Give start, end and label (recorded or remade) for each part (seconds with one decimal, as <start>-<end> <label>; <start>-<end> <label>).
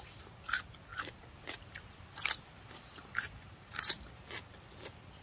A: 0.0-0.9 recorded; 0.9-4.0 remade; 4.0-5.2 recorded